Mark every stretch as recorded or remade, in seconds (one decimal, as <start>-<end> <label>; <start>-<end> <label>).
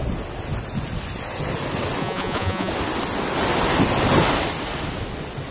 0.0-2.0 recorded; 2.0-2.7 remade; 2.7-5.5 recorded